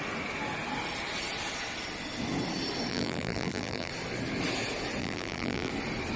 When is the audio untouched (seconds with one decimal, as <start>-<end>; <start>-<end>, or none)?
0.0-2.9; 3.9-5.0; 5.7-6.2